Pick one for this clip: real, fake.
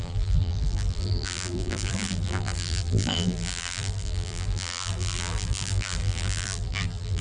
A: fake